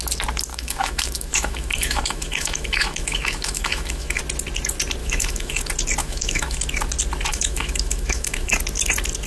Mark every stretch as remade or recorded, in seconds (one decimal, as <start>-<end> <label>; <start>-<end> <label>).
0.0-0.5 recorded; 0.5-4.2 remade; 4.2-5.0 recorded; 5.0-5.6 remade; 5.6-6.0 recorded; 6.0-6.6 remade; 6.6-7.3 recorded; 7.3-8.5 remade; 8.5-9.3 recorded